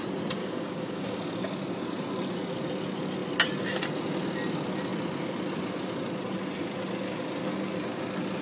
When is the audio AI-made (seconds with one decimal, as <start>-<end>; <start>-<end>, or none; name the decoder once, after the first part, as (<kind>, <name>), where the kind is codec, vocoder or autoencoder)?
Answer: 0.4-1.4 (codec, DAC)